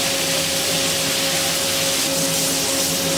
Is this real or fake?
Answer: real